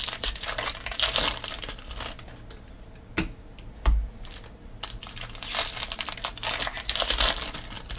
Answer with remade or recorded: recorded